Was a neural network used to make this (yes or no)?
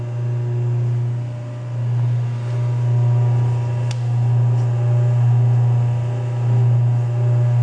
no